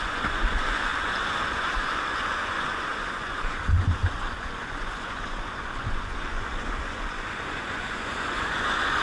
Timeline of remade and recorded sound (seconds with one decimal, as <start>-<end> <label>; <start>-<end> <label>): 0.0-9.0 remade